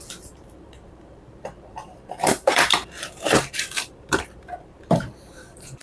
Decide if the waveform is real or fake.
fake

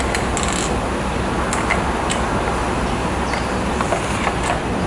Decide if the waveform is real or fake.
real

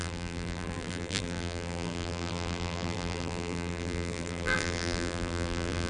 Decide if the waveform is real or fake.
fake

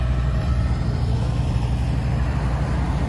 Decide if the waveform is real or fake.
fake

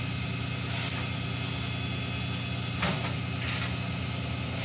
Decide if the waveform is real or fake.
real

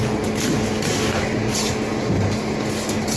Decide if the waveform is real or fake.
real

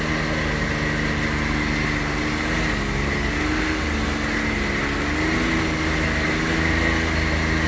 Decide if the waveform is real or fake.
real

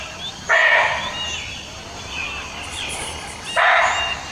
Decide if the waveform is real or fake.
real